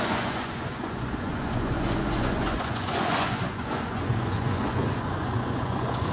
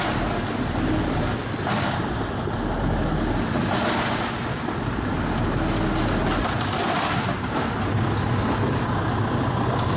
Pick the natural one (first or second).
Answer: second